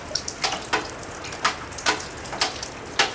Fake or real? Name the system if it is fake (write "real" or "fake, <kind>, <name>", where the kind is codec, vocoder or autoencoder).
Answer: real